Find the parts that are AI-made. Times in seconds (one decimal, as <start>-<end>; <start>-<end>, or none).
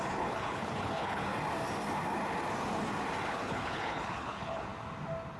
0.0-1.3; 3.3-4.7